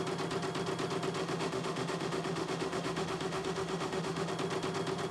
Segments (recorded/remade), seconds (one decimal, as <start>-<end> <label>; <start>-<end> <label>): 0.0-1.2 recorded; 1.2-4.3 remade; 4.3-5.1 recorded